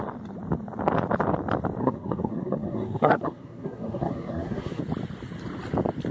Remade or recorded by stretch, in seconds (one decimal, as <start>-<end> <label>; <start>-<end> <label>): 0.0-1.8 recorded; 1.8-4.8 remade; 4.8-6.1 recorded